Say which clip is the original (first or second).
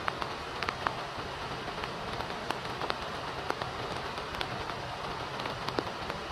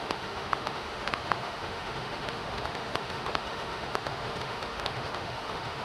first